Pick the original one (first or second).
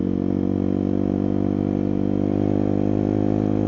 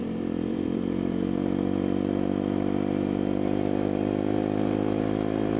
first